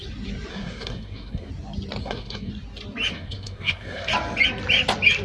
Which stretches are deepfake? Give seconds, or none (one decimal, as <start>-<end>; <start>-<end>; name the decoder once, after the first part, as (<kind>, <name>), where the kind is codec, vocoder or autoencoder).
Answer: 0.5-1.5 (codec, SNAC); 2.0-2.5; 3.1-4.1